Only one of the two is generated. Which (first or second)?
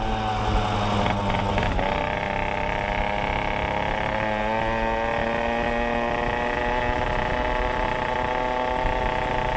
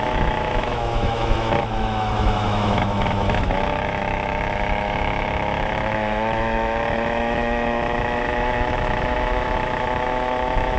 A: second